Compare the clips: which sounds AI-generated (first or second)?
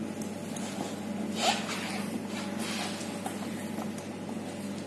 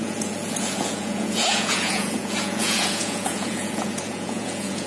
second